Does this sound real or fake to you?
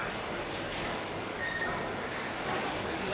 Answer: fake